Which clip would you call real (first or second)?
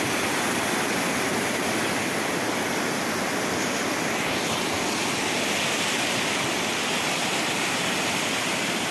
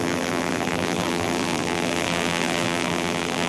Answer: first